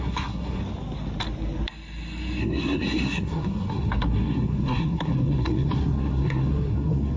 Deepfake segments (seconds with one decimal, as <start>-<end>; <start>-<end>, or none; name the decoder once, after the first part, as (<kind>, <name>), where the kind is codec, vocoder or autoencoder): 0.0-0.6 (codec, SNAC); 2.4-7.2